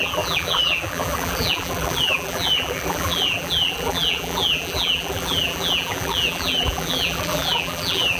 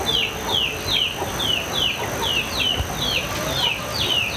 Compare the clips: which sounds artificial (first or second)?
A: first